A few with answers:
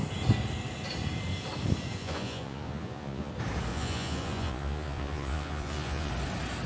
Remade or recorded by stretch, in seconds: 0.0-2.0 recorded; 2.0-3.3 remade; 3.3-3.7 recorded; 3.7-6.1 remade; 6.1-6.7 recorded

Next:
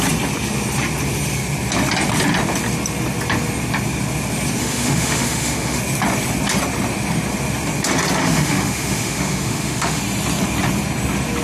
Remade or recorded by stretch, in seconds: 0.0-4.6 recorded; 4.6-5.8 remade; 5.8-8.2 recorded; 8.2-10.0 remade; 10.0-11.4 recorded

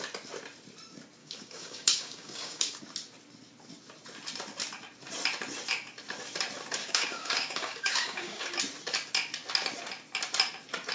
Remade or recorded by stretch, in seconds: 0.0-1.2 recorded; 1.2-2.8 remade; 2.8-6.8 recorded; 6.8-8.6 remade; 8.6-10.9 recorded

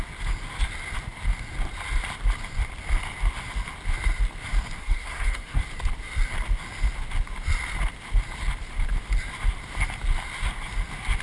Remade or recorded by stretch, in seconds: 0.0-4.8 recorded; 4.8-5.6 remade; 5.6-11.2 recorded